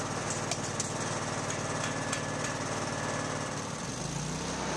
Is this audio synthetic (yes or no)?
no